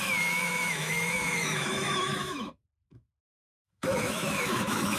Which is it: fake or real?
fake